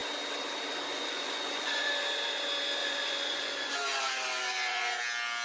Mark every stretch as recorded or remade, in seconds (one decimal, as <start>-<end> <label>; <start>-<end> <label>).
0.0-0.9 recorded; 0.9-1.9 remade; 1.9-2.8 recorded; 2.8-5.0 remade; 5.0-5.4 recorded

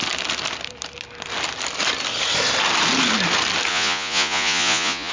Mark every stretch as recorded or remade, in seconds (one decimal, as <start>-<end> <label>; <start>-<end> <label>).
0.0-3.7 recorded; 3.7-5.1 remade